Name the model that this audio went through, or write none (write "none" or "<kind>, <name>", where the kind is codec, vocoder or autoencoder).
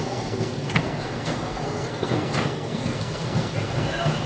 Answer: codec, SNAC